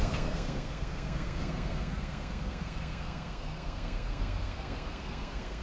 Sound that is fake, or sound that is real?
fake